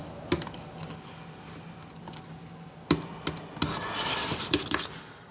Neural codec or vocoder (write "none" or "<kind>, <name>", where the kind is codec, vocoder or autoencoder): none